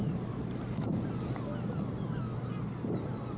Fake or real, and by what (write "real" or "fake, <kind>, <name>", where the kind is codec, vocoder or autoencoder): real